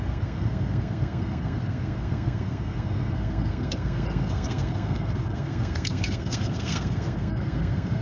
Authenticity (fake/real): fake